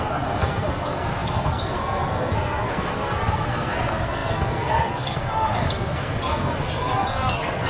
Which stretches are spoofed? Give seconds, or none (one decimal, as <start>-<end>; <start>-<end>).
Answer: 0.0-7.7